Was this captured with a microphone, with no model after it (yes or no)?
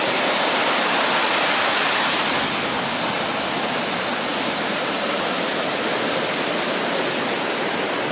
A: yes